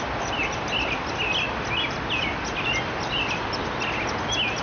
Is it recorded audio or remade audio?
recorded